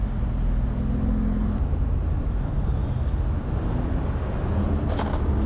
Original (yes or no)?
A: yes